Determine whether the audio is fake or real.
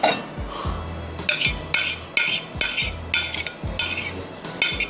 real